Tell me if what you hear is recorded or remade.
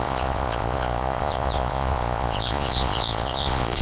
remade